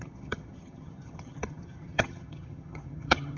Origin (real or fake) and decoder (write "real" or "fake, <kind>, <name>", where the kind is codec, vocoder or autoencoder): fake, vocoder, HiFi-GAN